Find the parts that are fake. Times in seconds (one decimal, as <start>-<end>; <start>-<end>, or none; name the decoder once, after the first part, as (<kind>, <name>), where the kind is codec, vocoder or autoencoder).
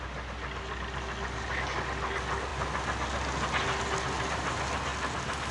none